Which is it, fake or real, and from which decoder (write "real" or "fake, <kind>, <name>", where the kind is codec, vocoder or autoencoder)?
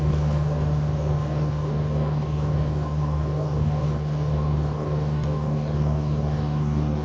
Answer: fake, codec, DAC